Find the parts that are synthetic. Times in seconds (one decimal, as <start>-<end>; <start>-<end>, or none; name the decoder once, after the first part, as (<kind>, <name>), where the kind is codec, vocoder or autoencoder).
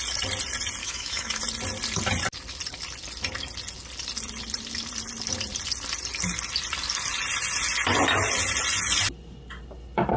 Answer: 0.8-1.4 (autoencoder, DAC-VAE)